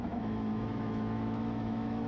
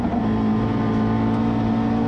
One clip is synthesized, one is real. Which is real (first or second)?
second